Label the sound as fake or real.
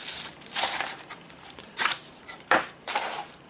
fake